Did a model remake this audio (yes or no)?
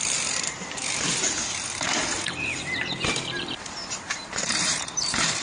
yes